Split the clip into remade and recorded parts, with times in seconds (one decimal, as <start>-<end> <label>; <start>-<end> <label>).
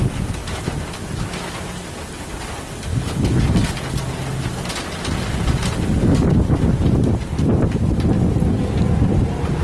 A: 0.0-2.9 recorded; 2.9-3.4 remade; 3.4-9.6 recorded